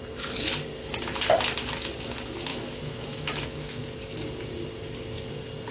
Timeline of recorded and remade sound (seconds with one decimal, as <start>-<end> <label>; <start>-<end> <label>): 0.0-2.5 recorded; 2.5-3.8 remade; 3.8-5.7 recorded